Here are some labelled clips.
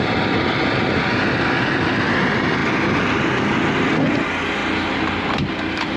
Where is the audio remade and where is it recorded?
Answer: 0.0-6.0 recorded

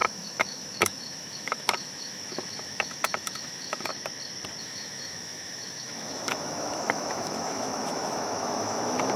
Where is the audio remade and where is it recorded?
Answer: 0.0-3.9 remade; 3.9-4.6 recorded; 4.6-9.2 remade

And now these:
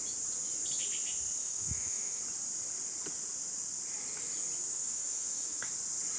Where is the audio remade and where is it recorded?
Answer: 0.0-1.4 recorded; 1.4-2.2 remade; 2.2-4.7 recorded; 4.7-5.7 remade; 5.7-6.2 recorded

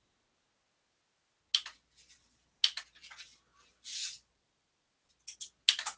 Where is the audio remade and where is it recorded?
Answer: 0.0-6.0 recorded